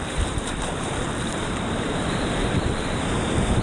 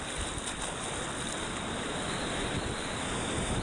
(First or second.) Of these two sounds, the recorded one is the second